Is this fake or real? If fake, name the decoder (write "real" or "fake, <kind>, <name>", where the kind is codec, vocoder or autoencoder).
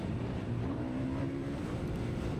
fake, vocoder, BigVGAN v2